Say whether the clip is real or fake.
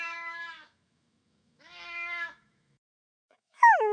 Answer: fake